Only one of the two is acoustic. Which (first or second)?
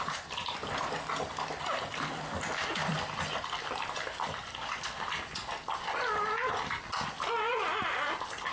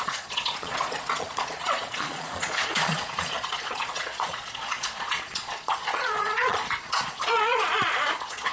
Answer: first